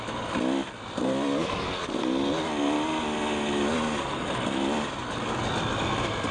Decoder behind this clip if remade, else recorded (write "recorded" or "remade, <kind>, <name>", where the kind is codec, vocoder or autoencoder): recorded